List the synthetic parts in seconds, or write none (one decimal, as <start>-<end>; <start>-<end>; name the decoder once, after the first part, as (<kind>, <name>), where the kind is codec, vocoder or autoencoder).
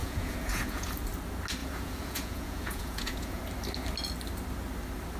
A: 0.0-0.9 (vocoder, Vocos); 1.6-3.4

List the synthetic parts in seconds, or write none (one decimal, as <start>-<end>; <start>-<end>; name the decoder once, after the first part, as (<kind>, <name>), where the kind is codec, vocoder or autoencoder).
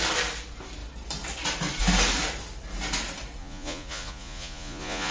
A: 3.4-5.1 (vocoder, Vocos)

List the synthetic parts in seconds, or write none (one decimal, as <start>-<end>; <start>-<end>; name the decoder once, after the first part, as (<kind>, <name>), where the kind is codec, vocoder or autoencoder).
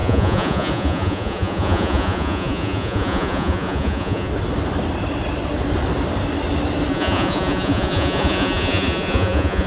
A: 0.0-4.3 (vocoder, Vocos); 6.9-9.7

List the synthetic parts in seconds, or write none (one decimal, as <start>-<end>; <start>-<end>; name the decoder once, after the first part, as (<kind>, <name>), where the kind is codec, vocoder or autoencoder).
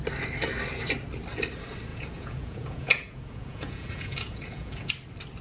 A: 1.9-4.9 (vocoder, Vocos)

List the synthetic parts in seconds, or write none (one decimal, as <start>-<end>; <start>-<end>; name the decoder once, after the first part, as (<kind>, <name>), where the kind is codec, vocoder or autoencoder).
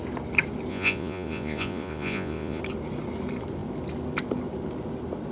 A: 0.7-2.6 (vocoder, Vocos)